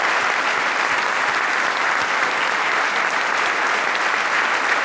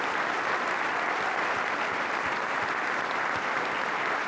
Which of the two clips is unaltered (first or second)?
first